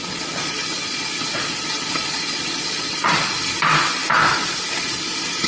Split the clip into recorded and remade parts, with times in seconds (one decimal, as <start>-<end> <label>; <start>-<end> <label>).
0.0-3.3 remade; 3.3-5.5 recorded